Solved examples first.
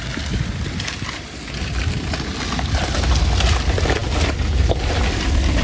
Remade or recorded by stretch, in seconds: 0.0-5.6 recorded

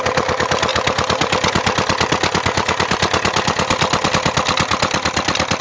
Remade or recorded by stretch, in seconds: 0.0-5.6 recorded

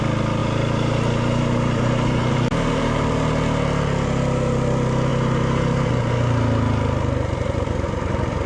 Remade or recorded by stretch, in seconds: 0.0-0.4 recorded; 0.4-3.0 remade; 3.0-5.1 recorded; 5.1-5.9 remade; 5.9-8.5 recorded